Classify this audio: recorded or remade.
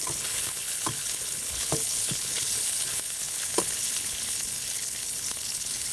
remade